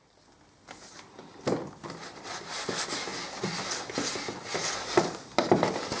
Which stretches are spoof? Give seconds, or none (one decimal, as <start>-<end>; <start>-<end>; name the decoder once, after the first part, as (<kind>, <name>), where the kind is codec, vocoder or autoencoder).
none